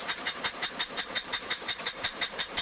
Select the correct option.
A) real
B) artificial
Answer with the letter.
B